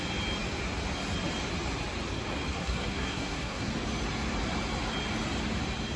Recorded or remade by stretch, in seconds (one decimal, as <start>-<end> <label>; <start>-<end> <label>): 0.0-2.5 recorded; 2.5-3.7 remade; 3.7-6.0 recorded